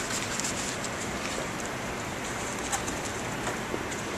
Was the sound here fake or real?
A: real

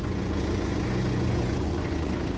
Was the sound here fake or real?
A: fake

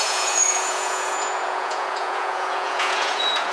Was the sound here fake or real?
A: fake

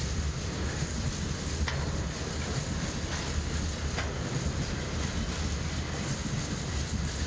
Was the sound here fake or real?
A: real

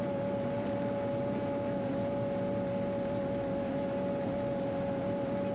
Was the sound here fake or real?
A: real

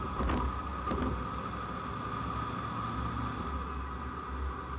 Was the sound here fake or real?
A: real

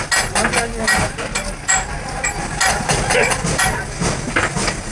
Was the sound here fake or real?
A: real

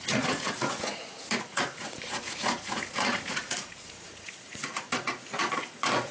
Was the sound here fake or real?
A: fake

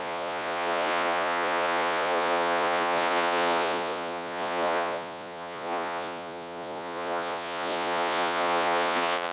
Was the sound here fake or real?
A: fake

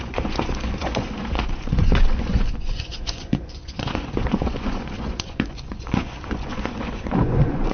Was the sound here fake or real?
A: fake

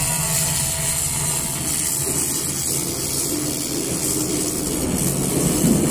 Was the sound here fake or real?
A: real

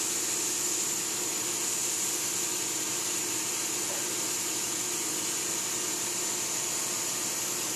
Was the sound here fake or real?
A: real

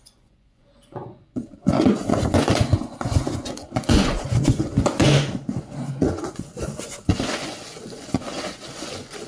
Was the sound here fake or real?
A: fake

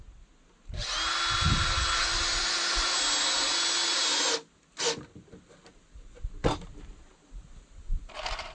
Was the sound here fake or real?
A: real